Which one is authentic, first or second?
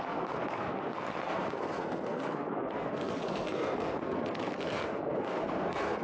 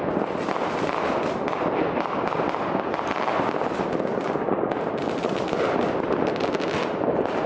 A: second